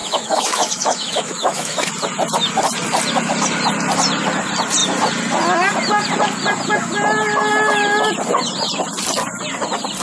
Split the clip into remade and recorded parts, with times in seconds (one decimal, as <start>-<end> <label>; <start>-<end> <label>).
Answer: 0.0-1.9 remade; 1.9-10.0 recorded